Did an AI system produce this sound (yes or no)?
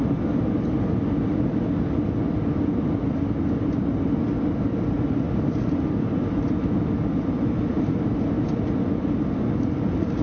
no